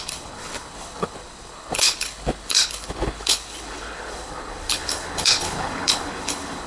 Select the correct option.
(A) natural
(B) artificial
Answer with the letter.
B